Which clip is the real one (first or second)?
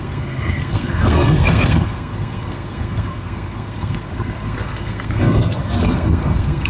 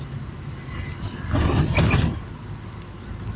second